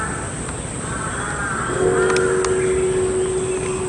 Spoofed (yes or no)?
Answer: no